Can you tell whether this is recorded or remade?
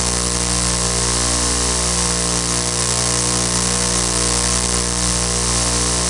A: recorded